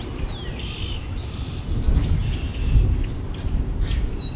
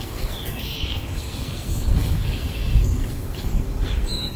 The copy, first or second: second